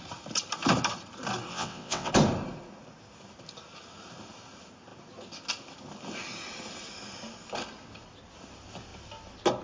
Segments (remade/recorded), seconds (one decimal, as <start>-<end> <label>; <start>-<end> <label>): 0.0-1.5 recorded; 1.5-2.1 remade; 2.1-9.6 recorded